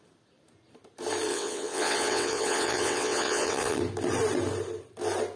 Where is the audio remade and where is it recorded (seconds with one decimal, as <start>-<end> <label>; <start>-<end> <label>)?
0.0-1.3 recorded; 1.3-3.8 remade; 3.8-5.4 recorded